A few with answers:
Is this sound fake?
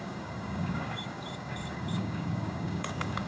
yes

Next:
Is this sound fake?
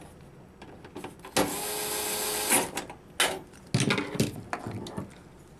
no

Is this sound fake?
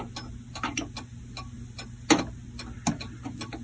no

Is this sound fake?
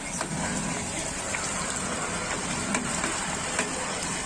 yes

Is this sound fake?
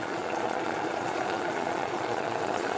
yes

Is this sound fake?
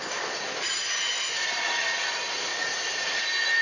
no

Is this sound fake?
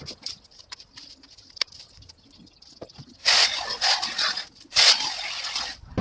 no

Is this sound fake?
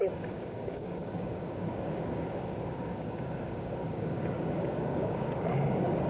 yes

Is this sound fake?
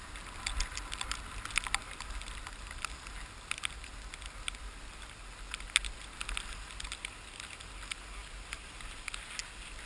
no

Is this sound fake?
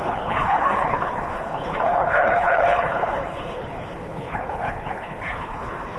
yes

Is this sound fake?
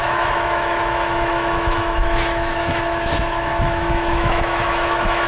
yes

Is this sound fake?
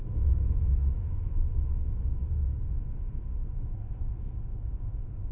yes